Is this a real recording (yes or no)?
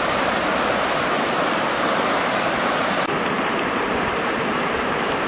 yes